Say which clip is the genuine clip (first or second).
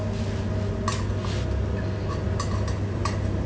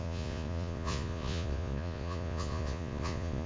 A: first